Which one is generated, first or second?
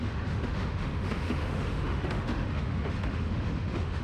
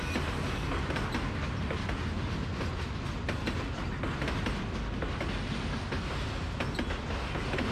first